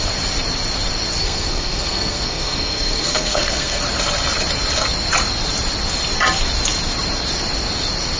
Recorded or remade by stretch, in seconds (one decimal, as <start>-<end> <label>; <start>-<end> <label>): 0.0-1.2 recorded; 1.2-3.8 remade; 3.8-8.2 recorded